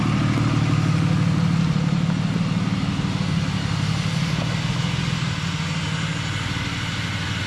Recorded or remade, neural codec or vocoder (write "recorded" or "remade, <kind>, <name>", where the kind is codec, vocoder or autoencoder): recorded